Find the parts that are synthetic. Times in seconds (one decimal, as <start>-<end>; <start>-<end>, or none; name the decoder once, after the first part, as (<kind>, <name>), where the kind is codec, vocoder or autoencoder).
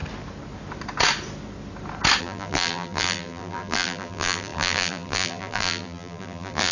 2.2-6.7 (vocoder, BigVGAN v2)